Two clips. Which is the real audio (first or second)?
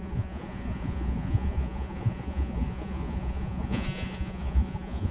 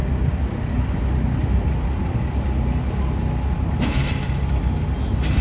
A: second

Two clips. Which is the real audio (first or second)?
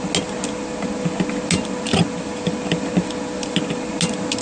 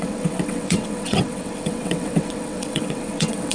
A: first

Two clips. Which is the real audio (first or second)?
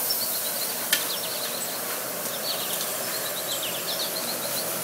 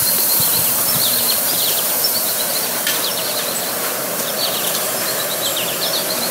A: first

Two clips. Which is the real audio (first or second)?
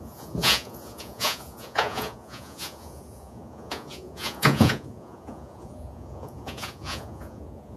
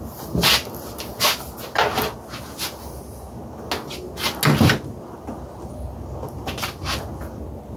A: second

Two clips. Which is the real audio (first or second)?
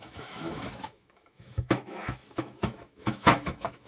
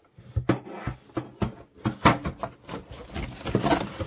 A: second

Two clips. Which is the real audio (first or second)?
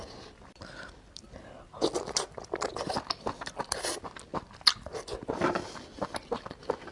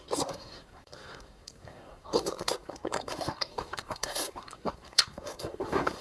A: first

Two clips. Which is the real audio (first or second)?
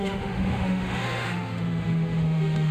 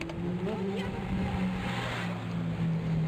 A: second